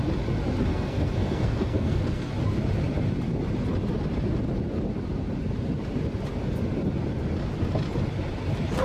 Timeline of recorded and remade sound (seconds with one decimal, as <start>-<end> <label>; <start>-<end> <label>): 0.0-0.7 recorded; 0.7-2.3 remade; 2.3-8.8 recorded